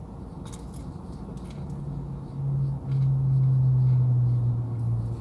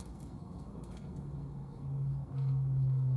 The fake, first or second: second